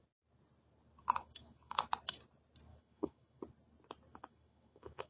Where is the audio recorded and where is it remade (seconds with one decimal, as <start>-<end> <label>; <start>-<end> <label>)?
0.0-1.0 recorded; 1.0-1.9 remade; 1.9-2.7 recorded; 2.7-3.4 remade; 3.4-4.1 recorded; 4.1-5.1 remade